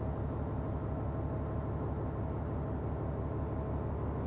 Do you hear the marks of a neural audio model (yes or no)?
no